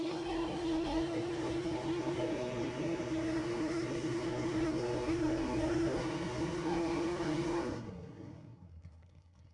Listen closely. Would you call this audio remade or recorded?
remade